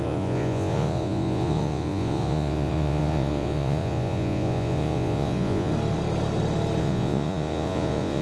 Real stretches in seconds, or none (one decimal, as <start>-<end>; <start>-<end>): 5.7-6.8